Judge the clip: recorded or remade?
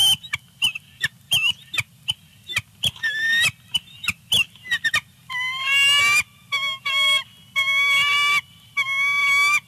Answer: recorded